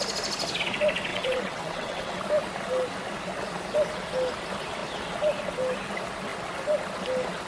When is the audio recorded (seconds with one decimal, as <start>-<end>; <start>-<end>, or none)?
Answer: 0.0-1.1; 2.2-7.5